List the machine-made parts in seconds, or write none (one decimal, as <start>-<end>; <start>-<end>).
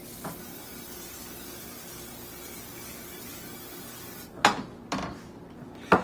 none